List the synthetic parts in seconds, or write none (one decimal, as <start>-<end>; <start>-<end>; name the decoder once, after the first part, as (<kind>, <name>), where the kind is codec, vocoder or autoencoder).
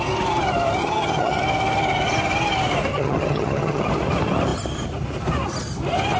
0.8-1.4 (vocoder, HiFi-GAN); 2.9-3.9